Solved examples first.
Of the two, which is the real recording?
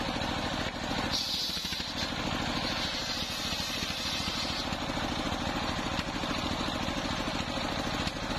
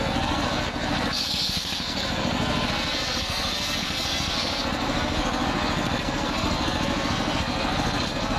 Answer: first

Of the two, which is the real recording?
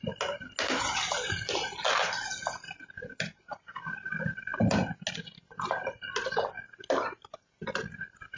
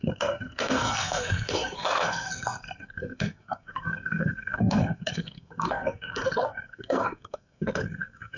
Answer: first